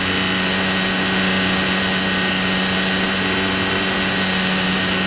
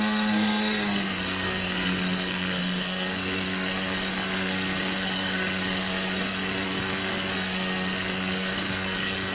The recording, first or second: first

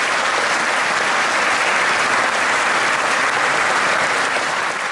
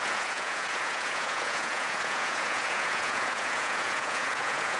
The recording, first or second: first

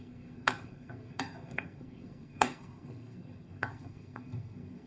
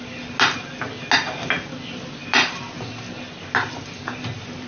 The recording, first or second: second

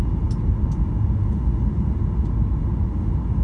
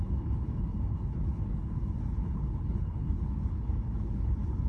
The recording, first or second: first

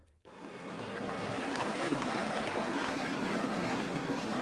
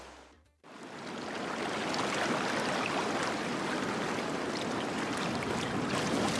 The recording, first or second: second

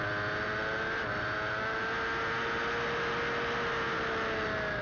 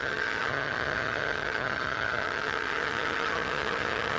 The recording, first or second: first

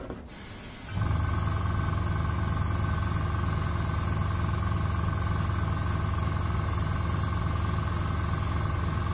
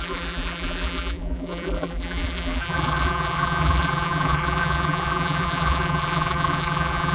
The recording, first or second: first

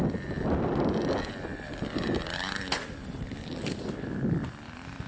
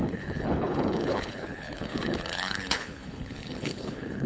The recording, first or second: first